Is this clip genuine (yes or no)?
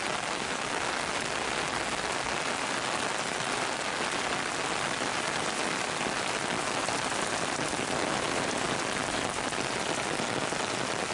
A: yes